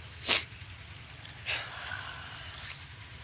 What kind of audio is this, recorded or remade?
recorded